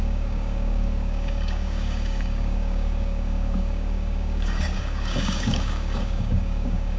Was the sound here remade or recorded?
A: remade